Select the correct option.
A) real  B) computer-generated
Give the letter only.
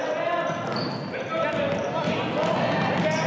A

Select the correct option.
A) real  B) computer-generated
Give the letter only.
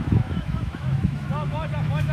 B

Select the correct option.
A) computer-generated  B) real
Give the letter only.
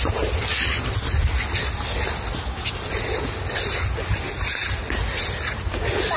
B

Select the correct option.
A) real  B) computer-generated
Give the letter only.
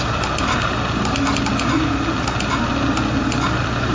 A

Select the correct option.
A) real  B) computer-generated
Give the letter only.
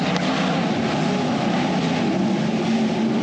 A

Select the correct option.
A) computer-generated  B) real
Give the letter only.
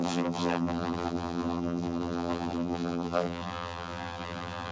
A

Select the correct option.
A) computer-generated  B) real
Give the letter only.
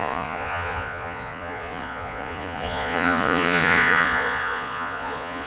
A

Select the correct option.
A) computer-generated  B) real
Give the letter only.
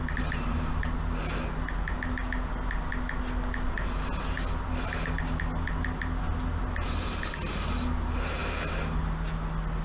B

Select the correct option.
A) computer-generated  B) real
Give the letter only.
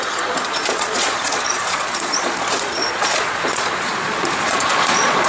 A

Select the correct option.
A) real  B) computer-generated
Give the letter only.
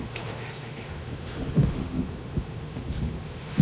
B